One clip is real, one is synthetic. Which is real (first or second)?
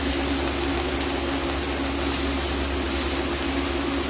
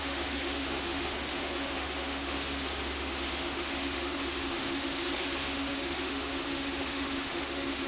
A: first